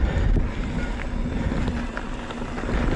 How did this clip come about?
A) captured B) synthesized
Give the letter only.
A